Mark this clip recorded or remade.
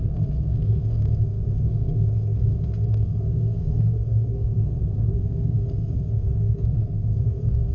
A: remade